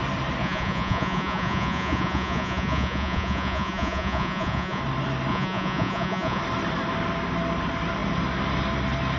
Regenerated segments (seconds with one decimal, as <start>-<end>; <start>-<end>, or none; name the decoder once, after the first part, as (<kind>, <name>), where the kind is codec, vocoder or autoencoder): 0.4-4.8 (vocoder, Vocos); 5.3-6.4